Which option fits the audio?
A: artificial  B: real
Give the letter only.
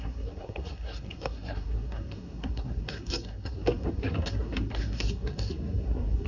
A